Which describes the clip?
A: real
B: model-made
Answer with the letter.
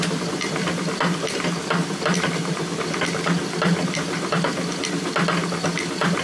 A